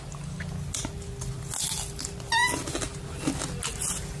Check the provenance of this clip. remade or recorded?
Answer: recorded